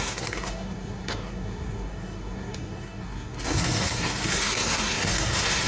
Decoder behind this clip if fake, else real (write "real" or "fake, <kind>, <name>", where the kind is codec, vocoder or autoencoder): fake, codec, SNAC